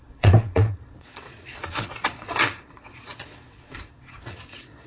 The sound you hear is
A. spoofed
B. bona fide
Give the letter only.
A